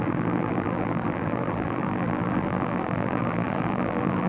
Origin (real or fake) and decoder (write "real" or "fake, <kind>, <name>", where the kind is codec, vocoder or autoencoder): fake, vocoder, BigVGAN v2